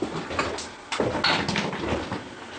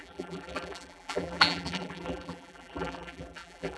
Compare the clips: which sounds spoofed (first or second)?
second